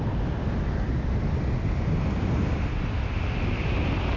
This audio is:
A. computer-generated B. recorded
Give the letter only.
B